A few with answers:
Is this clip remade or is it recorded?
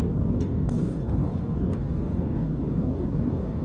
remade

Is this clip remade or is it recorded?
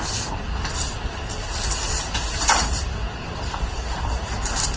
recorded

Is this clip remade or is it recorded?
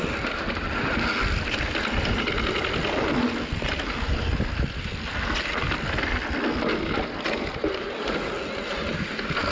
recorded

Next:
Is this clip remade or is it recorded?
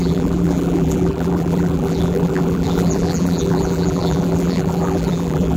remade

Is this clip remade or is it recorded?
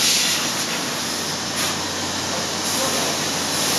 recorded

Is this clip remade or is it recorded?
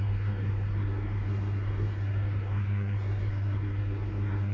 remade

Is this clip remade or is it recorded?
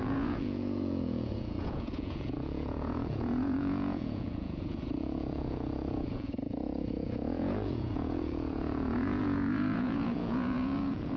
remade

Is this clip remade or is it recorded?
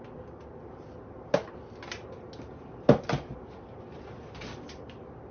recorded